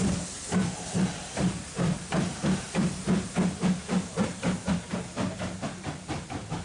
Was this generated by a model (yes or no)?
no